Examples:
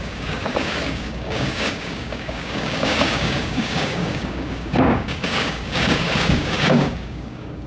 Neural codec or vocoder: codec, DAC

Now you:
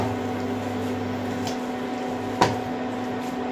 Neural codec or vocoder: none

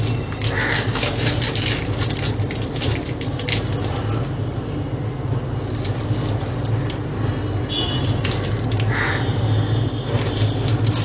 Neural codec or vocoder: none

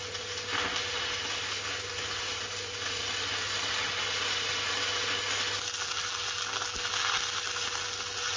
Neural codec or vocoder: none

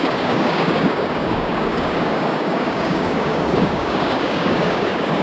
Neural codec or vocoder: codec, DAC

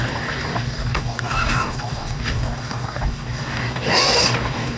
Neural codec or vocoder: codec, DAC